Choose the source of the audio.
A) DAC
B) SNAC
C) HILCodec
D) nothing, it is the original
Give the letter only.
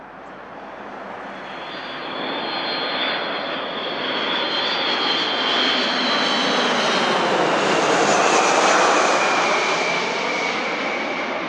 D